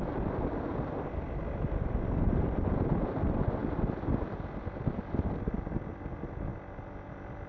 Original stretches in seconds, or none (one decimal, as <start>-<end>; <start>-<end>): 0.0-7.5